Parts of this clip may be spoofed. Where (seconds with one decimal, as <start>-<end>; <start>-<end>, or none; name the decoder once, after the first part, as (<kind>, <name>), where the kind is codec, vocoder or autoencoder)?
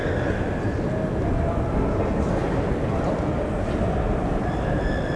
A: none